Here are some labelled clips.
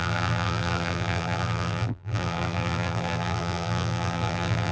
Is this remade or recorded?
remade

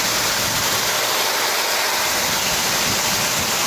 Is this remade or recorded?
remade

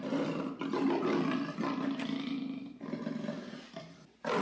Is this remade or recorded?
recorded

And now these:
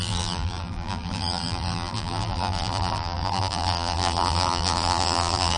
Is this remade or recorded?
remade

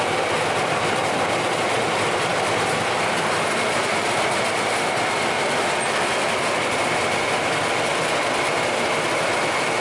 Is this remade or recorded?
remade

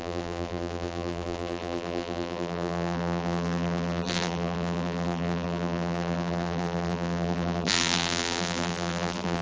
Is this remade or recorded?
remade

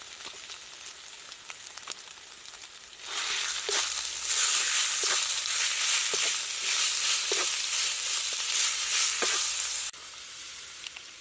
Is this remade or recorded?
recorded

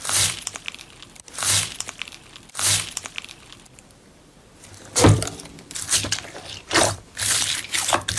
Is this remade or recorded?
remade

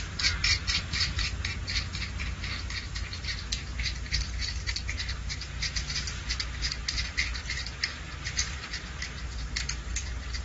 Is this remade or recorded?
recorded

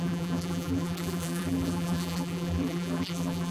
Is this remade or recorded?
remade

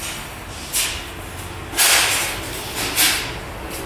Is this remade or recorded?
recorded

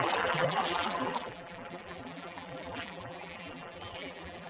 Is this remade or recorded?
remade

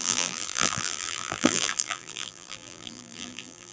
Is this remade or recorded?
remade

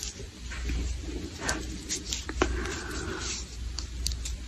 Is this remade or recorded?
recorded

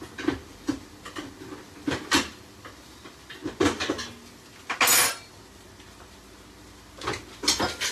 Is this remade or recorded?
recorded